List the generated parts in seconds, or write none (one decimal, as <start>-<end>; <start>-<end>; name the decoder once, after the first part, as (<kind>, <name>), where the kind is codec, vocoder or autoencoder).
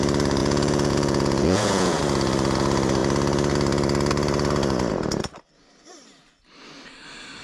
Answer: 0.4-2.0 (vocoder, Vocos)